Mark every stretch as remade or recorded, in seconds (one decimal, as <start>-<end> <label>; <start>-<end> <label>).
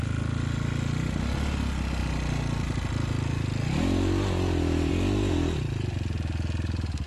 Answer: 0.0-7.1 recorded